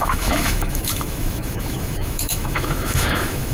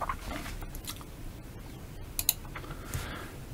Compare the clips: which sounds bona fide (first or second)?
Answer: second